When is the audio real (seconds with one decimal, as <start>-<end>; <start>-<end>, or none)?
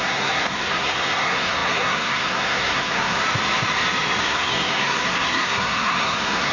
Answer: 3.2-4.2